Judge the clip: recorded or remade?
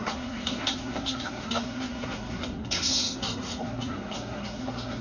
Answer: remade